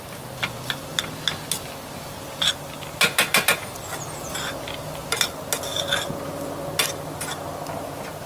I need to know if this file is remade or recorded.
recorded